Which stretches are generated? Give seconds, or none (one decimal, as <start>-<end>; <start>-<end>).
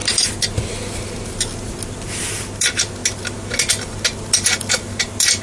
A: none